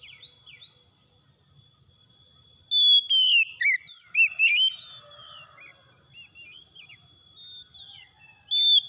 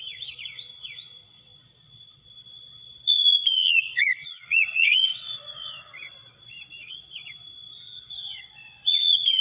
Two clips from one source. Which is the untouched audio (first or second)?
first